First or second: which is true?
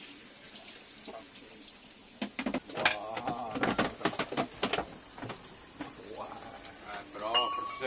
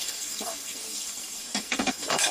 first